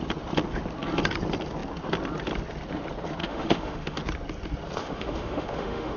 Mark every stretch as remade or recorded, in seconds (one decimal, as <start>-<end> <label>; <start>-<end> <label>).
0.0-3.2 recorded; 3.2-4.0 remade; 4.0-4.8 recorded; 4.8-6.0 remade